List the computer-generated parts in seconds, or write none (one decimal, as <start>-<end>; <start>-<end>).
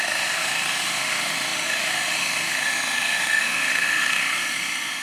0.0-5.0